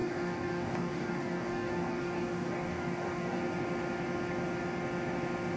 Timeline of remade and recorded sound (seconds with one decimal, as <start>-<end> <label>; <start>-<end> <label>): 0.0-3.4 remade; 3.4-5.6 recorded